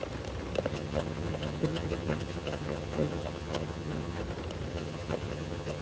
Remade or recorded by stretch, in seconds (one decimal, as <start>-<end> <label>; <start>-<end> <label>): 0.0-0.7 recorded; 0.7-4.2 remade; 4.2-4.7 recorded; 4.7-5.8 remade